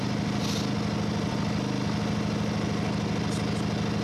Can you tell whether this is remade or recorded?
recorded